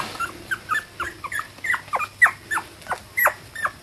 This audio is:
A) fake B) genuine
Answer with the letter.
B